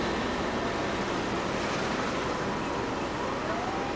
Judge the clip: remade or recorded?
recorded